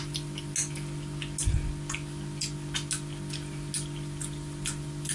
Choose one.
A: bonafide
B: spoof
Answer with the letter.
A